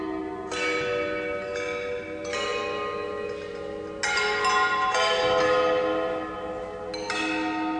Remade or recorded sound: recorded